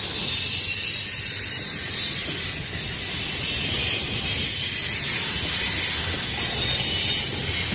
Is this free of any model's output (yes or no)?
yes